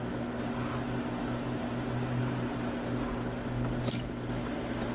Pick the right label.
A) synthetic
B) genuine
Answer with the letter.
B